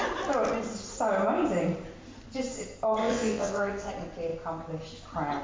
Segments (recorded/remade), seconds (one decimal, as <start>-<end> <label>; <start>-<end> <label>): 0.0-3.0 recorded; 3.0-3.9 remade; 3.9-5.4 recorded